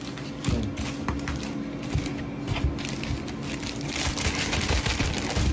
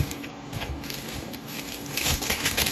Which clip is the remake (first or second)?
second